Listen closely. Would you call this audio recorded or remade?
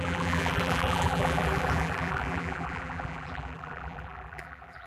remade